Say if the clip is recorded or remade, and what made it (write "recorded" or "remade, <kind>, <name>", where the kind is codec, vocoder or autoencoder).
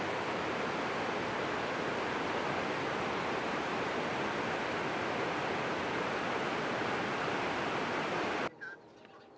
recorded